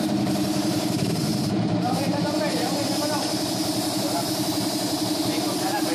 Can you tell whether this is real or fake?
fake